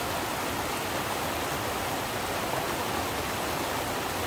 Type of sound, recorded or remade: recorded